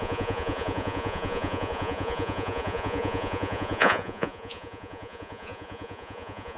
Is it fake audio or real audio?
fake